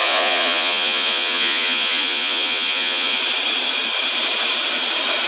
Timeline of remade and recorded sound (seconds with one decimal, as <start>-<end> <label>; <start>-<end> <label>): 0.0-3.2 remade; 3.2-5.3 recorded